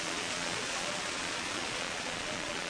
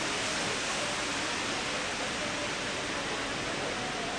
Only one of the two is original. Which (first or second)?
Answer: second